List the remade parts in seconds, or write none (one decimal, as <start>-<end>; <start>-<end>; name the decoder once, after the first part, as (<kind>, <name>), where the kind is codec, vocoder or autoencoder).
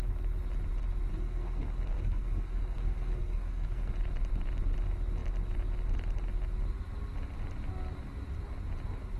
1.1-3.9 (codec, SNAC)